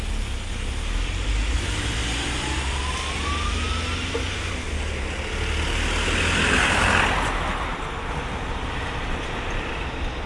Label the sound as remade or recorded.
recorded